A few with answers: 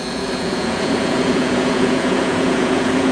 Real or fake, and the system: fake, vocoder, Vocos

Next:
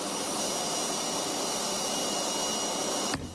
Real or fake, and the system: real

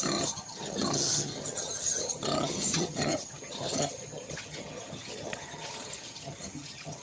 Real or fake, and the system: fake, vocoder, HiFi-GAN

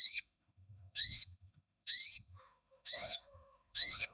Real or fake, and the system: fake, autoencoder, DAC-VAE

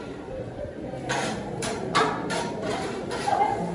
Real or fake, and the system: fake, vocoder, BigVGAN v2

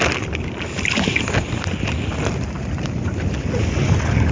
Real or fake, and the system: real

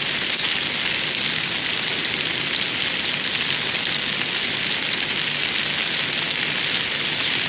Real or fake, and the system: real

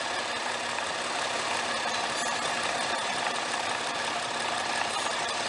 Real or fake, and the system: fake, vocoder, BigVGAN v2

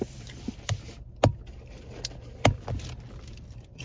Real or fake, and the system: real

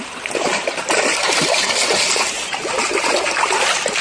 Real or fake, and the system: real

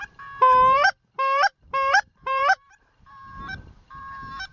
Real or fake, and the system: fake, vocoder, BigVGAN v2